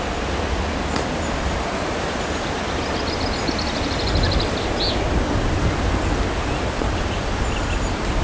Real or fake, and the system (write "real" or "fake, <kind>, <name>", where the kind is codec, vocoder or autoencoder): real